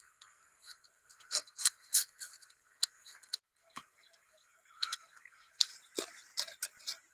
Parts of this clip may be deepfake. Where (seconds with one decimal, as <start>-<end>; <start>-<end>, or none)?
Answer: 0.0-5.7